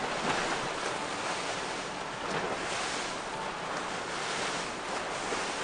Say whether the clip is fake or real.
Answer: real